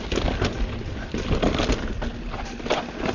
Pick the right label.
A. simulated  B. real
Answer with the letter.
B